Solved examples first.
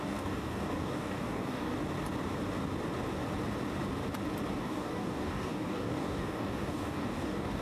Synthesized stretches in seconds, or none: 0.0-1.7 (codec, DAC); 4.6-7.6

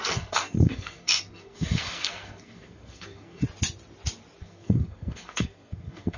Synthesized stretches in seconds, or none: 0.0-3.4 (codec, SNAC); 4.4-6.2

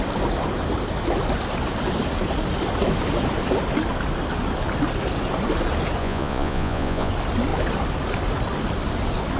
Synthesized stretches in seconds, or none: 6.0-7.1 (vocoder, Vocos)

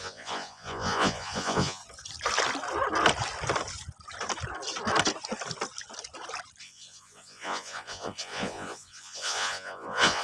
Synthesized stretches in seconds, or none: 0.0-1.8 (vocoder, Vocos); 6.6-10.2

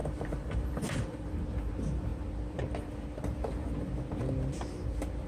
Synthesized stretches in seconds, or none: 0.0-1.3 (vocoder, BigVGAN v2)

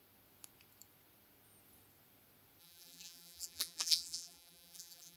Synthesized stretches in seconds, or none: 2.6-5.2 (vocoder, BigVGAN v2)

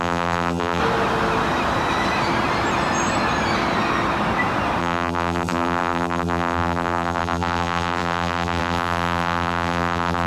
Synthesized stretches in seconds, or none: 0.0-0.8 (vocoder, BigVGAN v2); 4.8-10.3

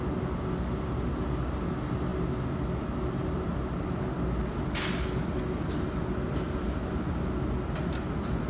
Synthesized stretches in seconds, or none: none